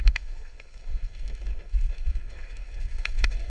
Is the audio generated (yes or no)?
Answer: yes